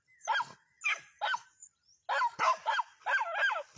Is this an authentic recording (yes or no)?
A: yes